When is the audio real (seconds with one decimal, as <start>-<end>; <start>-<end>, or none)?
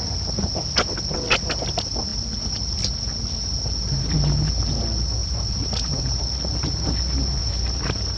0.0-5.2; 6.2-7.4